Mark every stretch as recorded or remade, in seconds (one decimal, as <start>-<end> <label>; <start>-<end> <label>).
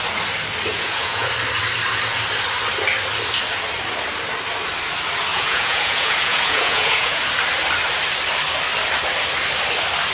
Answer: 0.0-0.7 recorded; 0.7-1.3 remade; 1.3-5.3 recorded; 5.3-7.2 remade; 7.2-10.1 recorded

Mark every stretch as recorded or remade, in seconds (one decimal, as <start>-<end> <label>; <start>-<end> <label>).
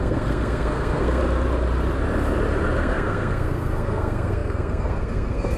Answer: 0.0-1.2 remade; 1.2-2.8 recorded; 2.8-5.6 remade